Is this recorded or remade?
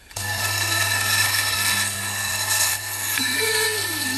remade